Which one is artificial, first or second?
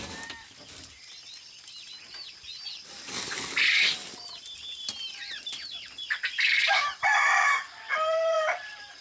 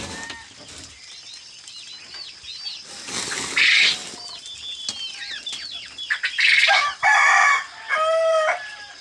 first